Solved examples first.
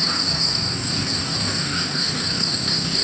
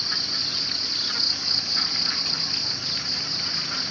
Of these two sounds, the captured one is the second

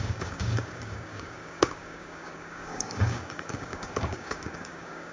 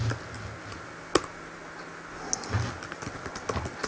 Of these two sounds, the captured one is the second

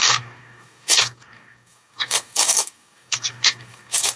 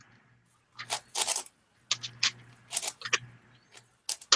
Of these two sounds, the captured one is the second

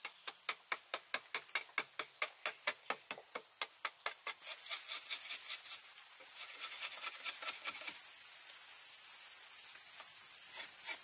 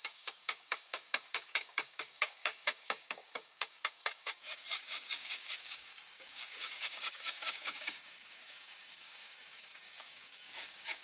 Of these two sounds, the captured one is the first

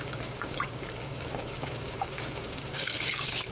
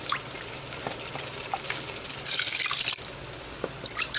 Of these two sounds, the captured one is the second